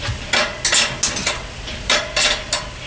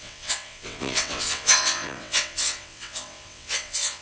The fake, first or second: second